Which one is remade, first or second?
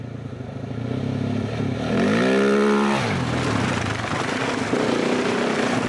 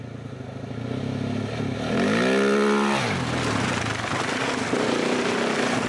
first